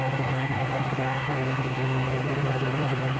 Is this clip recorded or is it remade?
remade